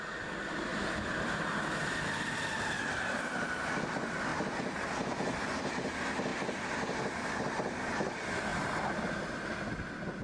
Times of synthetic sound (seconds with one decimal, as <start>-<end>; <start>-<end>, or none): 0.7-3.0; 6.3-7.0